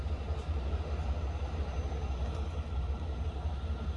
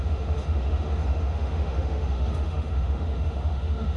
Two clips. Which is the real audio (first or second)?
first